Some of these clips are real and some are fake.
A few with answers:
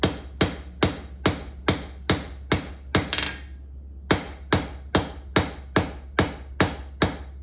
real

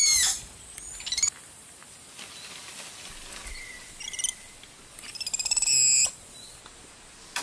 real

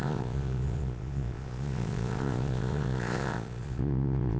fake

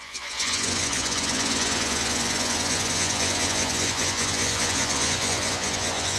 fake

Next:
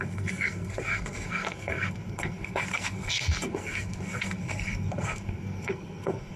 fake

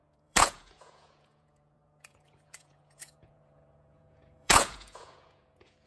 fake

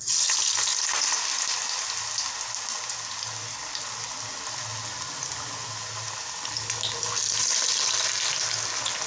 real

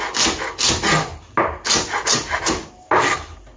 real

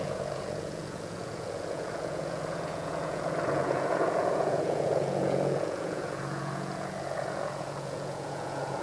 fake